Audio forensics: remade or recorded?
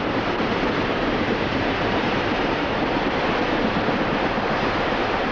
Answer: remade